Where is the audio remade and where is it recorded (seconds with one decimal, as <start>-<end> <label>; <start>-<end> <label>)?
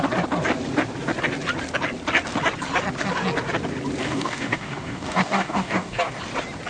0.0-4.0 recorded; 4.0-6.2 remade; 6.2-6.7 recorded